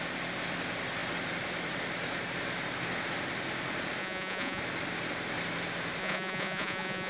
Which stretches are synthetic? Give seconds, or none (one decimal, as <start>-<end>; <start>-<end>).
4.0-4.6; 6.0-7.1